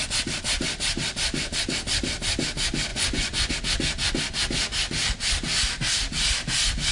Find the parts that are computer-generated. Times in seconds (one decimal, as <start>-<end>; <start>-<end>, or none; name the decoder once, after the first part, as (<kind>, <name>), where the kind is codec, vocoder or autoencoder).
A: 2.9-3.5 (vocoder, Vocos)